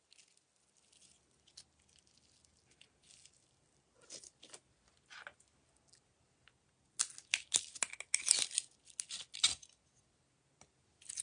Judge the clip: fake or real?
real